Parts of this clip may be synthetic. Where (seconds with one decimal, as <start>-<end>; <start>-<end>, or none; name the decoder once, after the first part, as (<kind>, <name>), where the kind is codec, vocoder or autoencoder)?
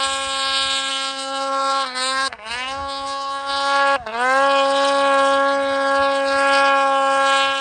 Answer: 0.9-3.5 (codec, SNAC)